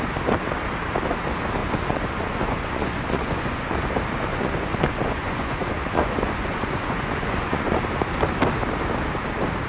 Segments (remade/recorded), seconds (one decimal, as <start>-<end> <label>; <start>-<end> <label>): 0.0-1.6 recorded; 1.6-3.9 remade; 3.9-4.3 recorded; 4.3-7.8 remade; 7.8-9.7 recorded